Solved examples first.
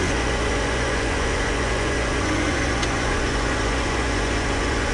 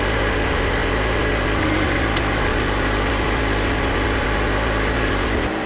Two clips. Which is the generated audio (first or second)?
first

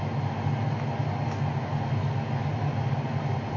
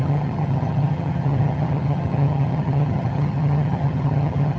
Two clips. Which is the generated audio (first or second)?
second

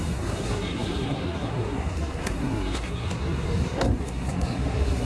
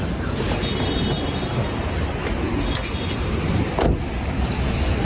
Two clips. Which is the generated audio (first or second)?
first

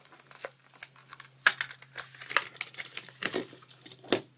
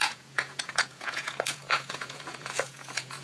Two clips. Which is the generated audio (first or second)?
second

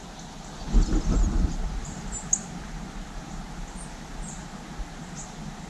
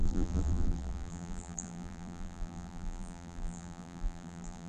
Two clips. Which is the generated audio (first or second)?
second